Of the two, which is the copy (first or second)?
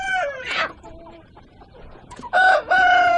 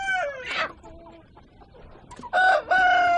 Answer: first